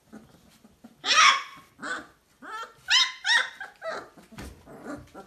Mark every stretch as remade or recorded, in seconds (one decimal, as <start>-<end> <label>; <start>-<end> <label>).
0.0-5.3 recorded